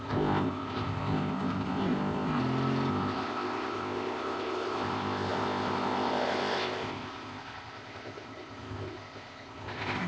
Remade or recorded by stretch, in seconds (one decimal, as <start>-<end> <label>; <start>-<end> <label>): 0.0-2.4 remade; 2.4-2.9 recorded; 2.9-10.1 remade